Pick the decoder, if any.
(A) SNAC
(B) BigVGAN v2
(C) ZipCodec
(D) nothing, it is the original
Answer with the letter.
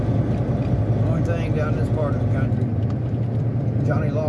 D